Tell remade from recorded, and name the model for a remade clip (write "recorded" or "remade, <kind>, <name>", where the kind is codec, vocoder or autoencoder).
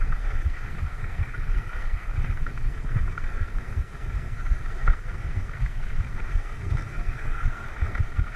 remade, codec, SNAC